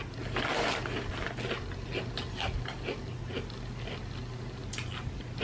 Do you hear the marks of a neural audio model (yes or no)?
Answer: no